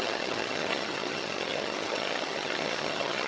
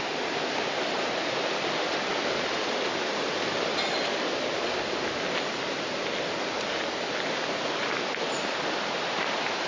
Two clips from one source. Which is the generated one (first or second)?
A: first